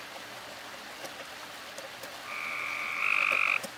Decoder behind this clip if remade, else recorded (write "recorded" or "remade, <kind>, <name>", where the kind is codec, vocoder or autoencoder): remade, vocoder, BigVGAN v2